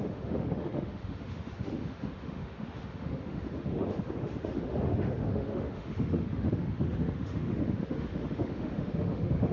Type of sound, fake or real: fake